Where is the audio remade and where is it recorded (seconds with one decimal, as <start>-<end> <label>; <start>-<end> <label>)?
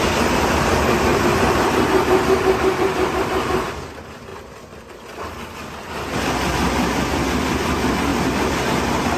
0.0-1.1 recorded; 1.1-3.7 remade; 3.7-9.2 recorded